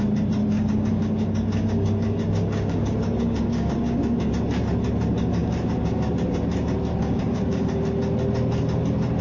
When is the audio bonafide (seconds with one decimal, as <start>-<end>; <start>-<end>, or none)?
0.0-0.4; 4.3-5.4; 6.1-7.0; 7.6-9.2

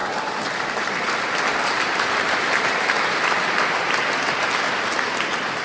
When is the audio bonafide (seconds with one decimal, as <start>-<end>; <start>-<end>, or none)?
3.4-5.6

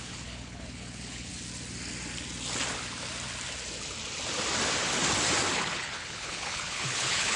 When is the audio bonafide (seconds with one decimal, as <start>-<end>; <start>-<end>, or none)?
1.3-5.5

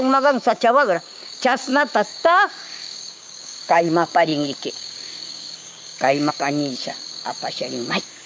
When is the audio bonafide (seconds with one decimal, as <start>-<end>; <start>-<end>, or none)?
none

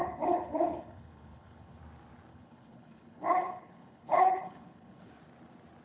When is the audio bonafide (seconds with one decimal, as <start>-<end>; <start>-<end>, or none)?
1.8-2.3; 5.1-5.8

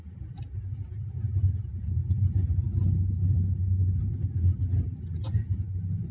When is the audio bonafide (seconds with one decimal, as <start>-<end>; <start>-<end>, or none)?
0.0-6.1